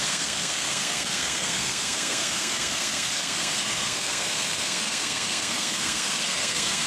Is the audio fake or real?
fake